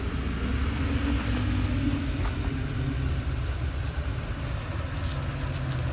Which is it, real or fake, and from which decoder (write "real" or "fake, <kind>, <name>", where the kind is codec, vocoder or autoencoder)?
real